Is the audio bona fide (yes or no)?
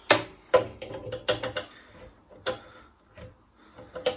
yes